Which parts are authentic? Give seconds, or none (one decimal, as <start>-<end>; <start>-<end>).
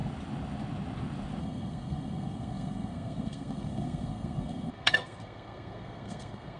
0.0-1.4